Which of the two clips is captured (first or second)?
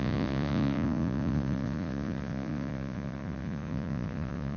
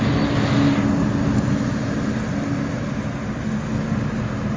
second